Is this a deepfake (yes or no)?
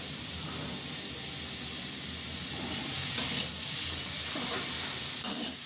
yes